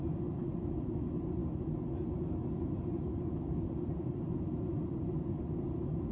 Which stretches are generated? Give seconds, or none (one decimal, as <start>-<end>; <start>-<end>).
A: none